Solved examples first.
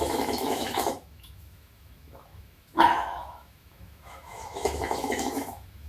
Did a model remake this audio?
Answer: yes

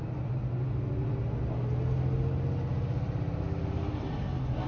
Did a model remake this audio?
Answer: no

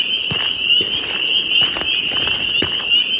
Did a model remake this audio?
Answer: no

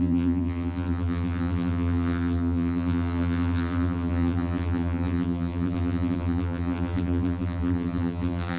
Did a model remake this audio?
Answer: yes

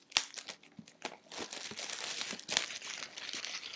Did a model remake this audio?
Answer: no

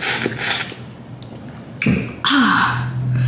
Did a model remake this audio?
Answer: no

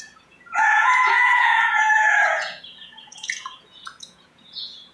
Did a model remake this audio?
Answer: yes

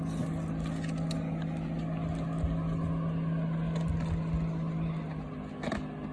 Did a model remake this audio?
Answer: no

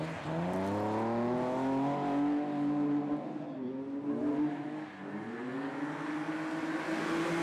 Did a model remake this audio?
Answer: no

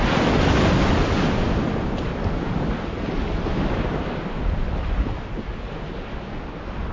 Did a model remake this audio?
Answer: no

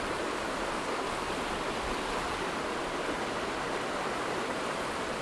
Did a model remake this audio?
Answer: no